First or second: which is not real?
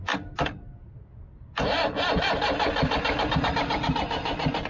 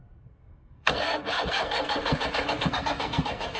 second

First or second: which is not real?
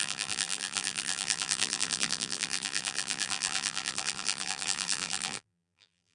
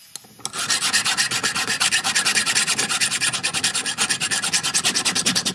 first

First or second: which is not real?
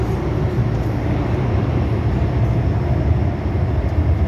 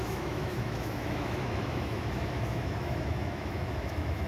second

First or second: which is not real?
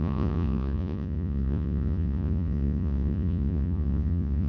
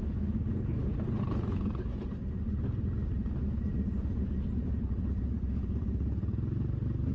first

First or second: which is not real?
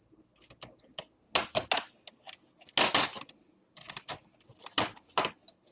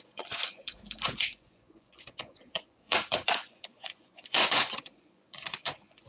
second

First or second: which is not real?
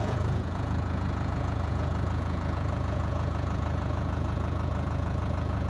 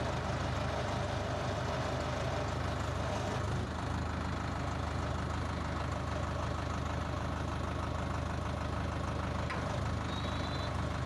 first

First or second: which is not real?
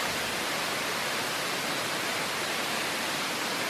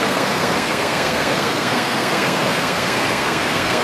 second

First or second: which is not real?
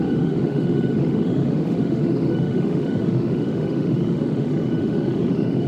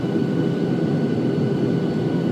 first